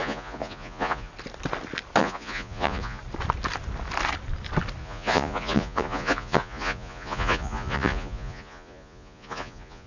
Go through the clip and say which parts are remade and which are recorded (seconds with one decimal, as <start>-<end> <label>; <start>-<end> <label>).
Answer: 0.0-1.1 remade; 1.1-2.0 recorded; 2.0-3.0 remade; 3.0-4.8 recorded; 4.8-9.9 remade